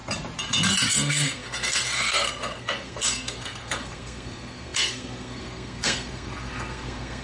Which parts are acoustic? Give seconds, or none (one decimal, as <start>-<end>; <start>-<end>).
0.0-0.9